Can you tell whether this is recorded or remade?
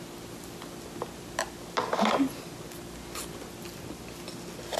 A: recorded